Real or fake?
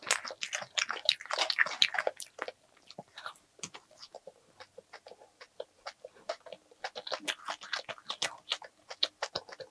real